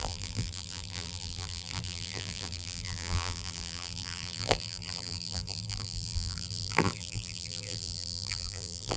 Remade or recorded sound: remade